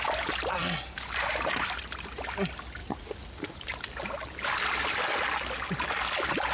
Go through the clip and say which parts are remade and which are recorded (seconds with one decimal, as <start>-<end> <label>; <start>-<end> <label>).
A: 0.0-2.8 recorded; 2.8-3.6 remade; 3.6-6.5 recorded